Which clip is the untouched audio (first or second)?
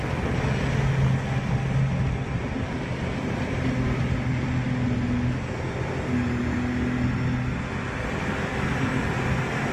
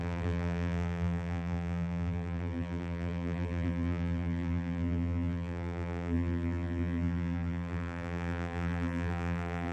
first